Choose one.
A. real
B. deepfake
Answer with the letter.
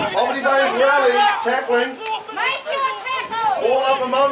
A